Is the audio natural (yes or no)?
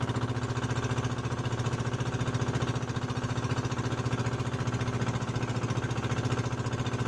yes